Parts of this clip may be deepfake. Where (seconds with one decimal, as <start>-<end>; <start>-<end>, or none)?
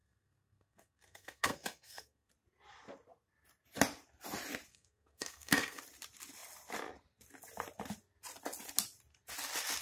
0.0-2.3; 4.7-5.8